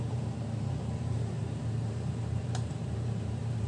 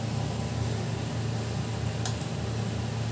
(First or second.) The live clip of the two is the second